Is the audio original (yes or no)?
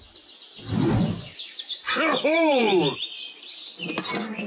yes